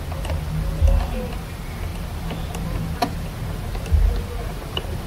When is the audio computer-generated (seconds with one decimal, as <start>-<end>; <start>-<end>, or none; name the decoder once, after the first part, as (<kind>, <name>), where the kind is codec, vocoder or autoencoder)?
none